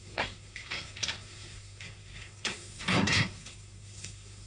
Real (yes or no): no